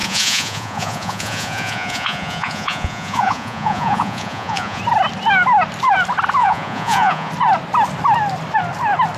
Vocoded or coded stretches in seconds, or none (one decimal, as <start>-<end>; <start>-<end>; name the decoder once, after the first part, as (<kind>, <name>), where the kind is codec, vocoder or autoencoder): 0.0-4.8 (vocoder, Vocos); 6.4-7.3